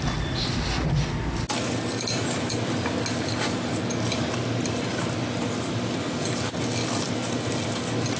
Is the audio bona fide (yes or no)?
yes